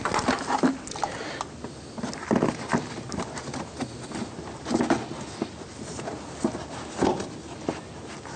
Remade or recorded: recorded